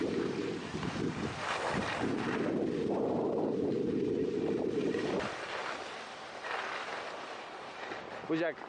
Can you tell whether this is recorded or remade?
recorded